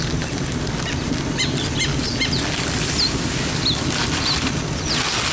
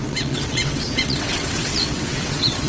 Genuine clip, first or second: first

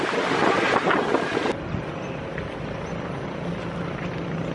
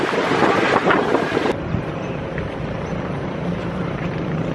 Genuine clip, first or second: first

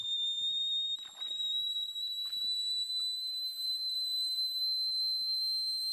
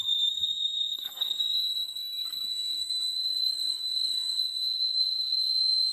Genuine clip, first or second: first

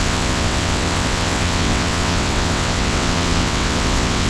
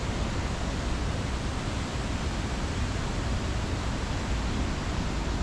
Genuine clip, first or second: second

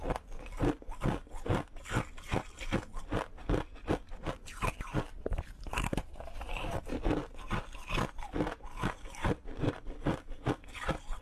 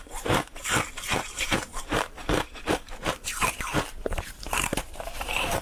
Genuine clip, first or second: first